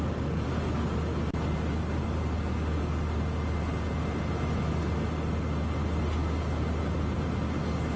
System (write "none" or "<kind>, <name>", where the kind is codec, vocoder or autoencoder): none